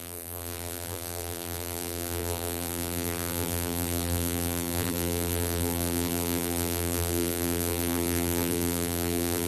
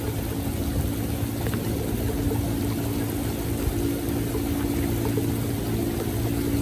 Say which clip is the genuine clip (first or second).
second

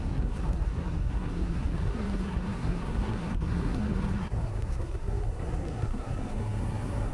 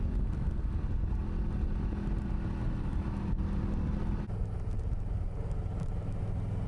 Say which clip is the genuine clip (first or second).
second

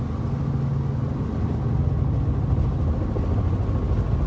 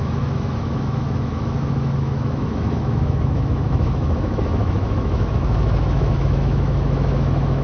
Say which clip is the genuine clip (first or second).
first